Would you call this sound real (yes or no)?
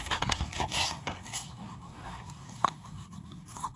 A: no